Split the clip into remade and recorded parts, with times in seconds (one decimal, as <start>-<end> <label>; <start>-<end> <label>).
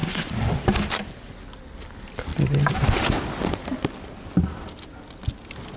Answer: 0.0-0.5 remade; 0.5-2.3 recorded; 2.3-4.4 remade; 4.4-5.8 recorded